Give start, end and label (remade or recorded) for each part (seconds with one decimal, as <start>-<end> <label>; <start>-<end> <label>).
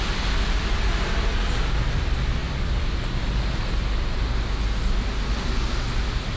0.0-6.4 recorded